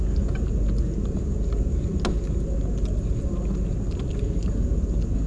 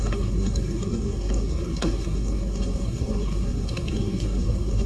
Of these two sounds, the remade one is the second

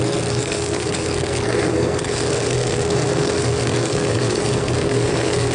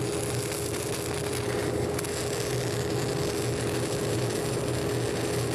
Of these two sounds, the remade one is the first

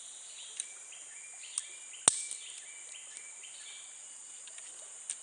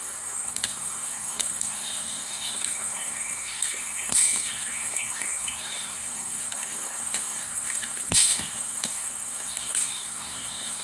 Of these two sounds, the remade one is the second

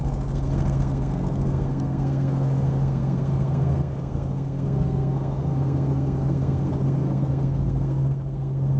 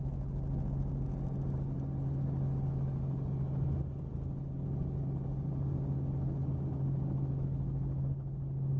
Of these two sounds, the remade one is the first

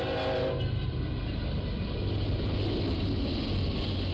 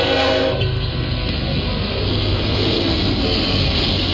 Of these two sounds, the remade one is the second